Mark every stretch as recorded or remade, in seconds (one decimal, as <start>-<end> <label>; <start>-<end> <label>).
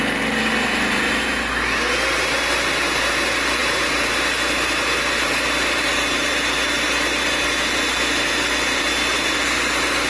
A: 0.0-10.1 recorded